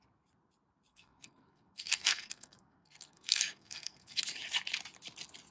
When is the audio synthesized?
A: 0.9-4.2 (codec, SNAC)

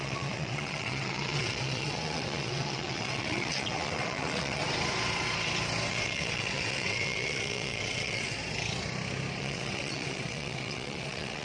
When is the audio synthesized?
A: 0.0-4.6 (vocoder, WaveNeXt); 5.9-8.4; 9.4-11.4

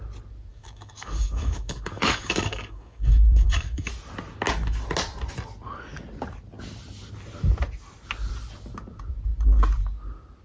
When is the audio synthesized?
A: 0.5-3.9 (codec, DAC)

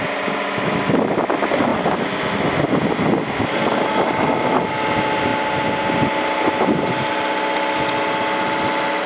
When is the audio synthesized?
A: none

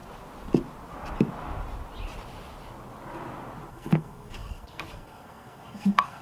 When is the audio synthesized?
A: 3.7-6.2 (codec, SNAC)

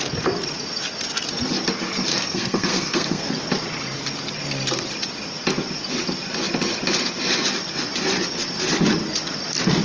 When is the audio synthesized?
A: 2.1-3.3 (codec, SNAC)